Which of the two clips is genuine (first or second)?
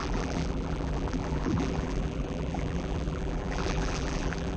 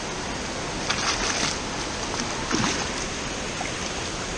second